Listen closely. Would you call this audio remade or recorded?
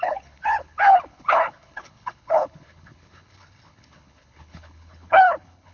remade